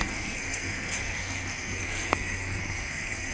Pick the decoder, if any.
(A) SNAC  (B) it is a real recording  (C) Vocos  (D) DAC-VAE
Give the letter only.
A